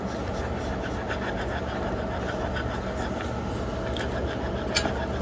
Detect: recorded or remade recorded